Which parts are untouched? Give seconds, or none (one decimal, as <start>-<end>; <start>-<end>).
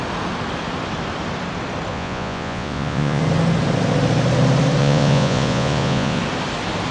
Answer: 0.0-1.9; 3.2-4.8; 6.2-6.9